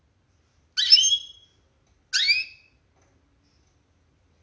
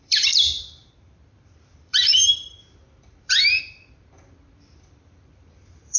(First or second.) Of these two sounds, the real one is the first